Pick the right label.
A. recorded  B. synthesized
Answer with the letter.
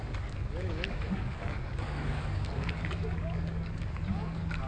B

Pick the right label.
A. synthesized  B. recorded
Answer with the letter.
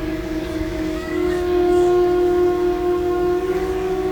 A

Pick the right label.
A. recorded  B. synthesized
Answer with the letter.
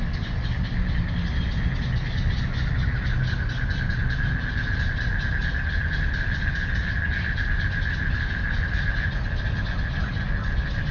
A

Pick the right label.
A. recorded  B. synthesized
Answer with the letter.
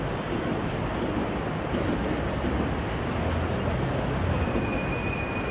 A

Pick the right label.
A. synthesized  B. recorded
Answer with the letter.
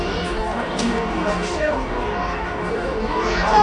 A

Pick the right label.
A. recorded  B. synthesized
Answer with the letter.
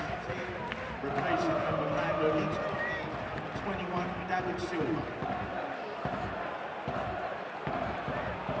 A